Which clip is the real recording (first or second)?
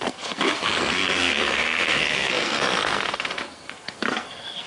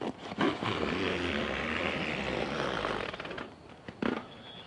second